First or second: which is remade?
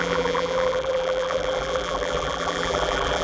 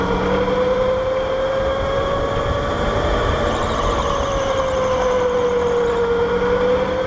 first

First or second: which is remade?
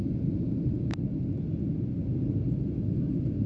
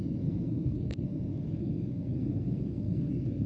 second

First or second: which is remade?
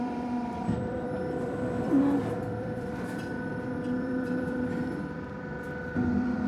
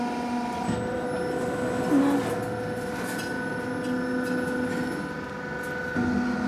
first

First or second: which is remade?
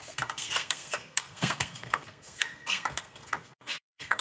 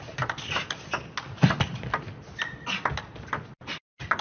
first